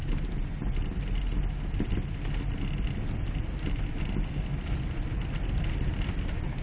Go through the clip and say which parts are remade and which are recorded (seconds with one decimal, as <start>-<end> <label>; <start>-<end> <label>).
0.0-4.5 recorded; 4.5-5.6 remade; 5.6-6.6 recorded